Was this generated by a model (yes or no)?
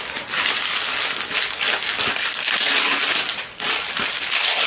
no